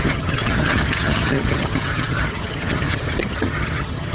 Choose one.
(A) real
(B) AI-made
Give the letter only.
B